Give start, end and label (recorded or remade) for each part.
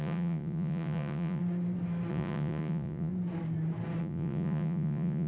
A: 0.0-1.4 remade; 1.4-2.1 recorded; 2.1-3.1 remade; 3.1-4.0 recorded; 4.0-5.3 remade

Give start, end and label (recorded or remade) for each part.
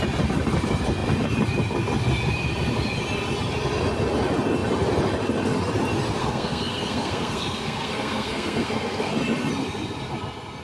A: 0.0-6.2 recorded; 6.2-9.1 remade; 9.1-10.6 recorded